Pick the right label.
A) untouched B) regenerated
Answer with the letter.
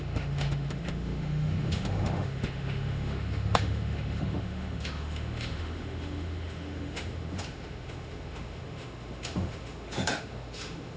B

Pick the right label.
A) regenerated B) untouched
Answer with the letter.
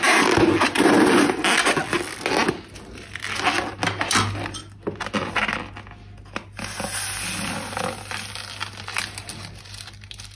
B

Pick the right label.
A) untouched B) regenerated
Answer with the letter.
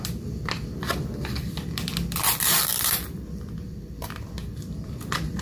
B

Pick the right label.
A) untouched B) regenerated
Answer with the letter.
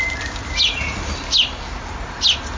A